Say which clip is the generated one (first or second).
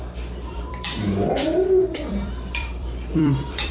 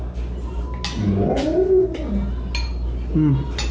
first